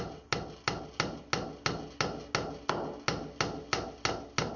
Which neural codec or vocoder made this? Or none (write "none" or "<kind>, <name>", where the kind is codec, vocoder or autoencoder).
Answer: none